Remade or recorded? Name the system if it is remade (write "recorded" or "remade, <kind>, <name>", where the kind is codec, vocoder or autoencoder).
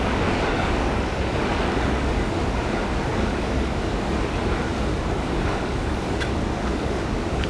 remade, codec, DAC